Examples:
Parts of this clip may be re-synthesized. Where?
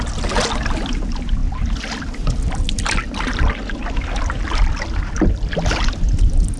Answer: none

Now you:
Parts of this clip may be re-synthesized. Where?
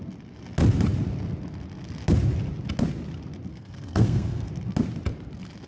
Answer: 3.5-4.5 (codec, SNAC)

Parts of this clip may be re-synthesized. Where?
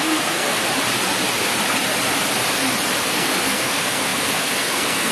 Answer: 0.0-0.6 (codec, SNAC); 3.1-5.1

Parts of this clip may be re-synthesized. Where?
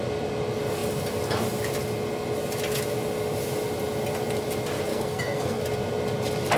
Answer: 4.9-5.6 (codec, SNAC)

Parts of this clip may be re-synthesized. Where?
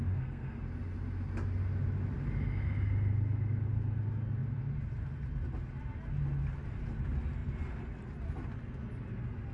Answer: 0.0-0.6 (codec, SNAC)